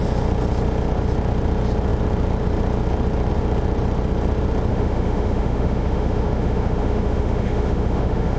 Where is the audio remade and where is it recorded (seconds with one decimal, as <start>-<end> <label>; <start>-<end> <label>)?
0.0-4.7 recorded; 4.7-8.4 remade

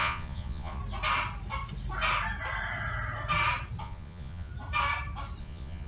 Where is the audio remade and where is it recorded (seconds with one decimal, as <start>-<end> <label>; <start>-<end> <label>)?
0.0-0.8 remade; 0.8-3.8 recorded; 3.8-4.5 remade; 4.5-5.4 recorded; 5.4-5.9 remade

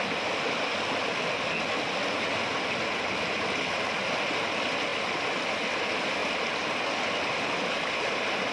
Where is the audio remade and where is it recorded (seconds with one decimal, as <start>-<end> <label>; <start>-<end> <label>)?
0.0-8.5 recorded

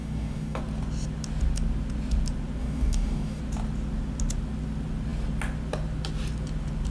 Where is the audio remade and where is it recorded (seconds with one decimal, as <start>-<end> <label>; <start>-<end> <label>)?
0.0-0.6 remade; 0.6-2.6 recorded; 2.6-3.4 remade; 3.4-6.9 recorded

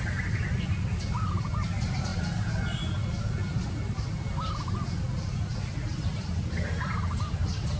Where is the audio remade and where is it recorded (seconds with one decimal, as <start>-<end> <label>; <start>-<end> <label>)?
0.0-7.8 recorded

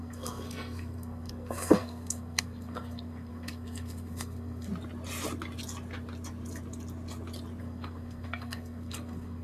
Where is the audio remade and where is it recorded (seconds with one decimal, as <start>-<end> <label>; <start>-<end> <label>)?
0.0-4.7 remade; 4.7-7.6 recorded; 7.6-9.4 remade